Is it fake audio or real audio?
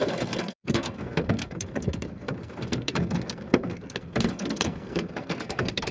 fake